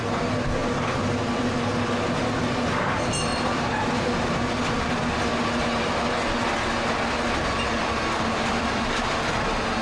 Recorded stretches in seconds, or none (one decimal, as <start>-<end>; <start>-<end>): 0.0-0.6; 1.4-3.3; 5.0-7.8; 9.3-9.8